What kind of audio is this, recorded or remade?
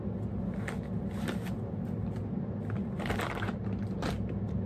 recorded